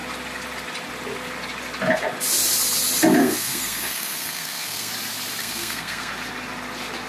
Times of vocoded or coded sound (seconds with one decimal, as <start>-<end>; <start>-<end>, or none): 3.2-4.9; 5.4-6.1